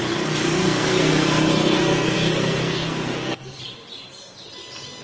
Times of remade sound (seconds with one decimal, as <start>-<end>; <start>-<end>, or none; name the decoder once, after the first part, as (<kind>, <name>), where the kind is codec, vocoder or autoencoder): 0.6-3.6 (codec, SNAC)